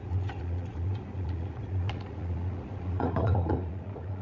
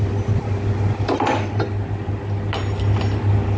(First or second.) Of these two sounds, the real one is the second